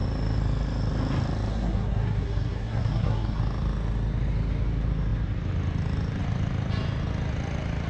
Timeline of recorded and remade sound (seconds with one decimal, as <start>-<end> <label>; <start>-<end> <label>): 0.0-1.5 recorded; 1.5-3.4 remade; 3.4-7.9 recorded